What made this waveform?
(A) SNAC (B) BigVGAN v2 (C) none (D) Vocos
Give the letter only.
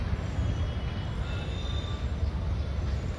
C